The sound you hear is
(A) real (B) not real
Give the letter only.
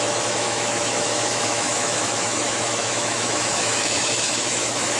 B